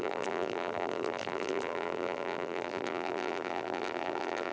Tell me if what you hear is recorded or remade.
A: remade